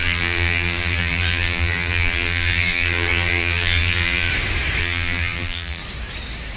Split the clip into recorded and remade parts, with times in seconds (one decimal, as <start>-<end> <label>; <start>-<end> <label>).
0.0-4.3 remade; 4.3-4.8 recorded; 4.8-5.8 remade; 5.8-6.6 recorded